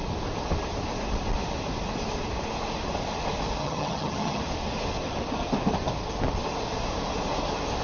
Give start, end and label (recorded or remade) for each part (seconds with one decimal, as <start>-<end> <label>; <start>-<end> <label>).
0.0-3.6 recorded; 3.6-4.4 remade; 4.4-7.8 recorded